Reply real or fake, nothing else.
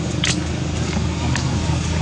fake